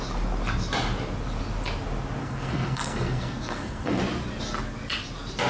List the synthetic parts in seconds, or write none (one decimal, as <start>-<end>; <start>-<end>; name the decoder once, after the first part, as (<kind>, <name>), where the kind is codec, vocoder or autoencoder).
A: 2.2-4.0 (codec, SNAC)